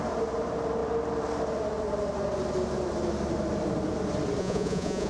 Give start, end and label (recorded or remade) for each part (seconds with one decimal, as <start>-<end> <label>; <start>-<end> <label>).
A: 0.0-4.4 recorded; 4.4-5.1 remade